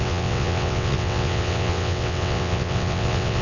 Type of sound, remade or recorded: remade